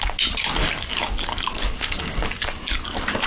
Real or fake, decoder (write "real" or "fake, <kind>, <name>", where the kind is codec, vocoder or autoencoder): real